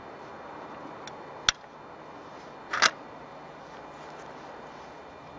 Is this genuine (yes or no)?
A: yes